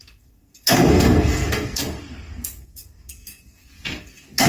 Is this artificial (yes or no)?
yes